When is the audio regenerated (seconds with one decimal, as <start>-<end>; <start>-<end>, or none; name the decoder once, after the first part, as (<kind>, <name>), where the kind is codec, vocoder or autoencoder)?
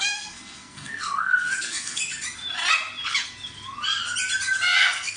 0.0-2.0 (codec, SNAC); 4.8-5.2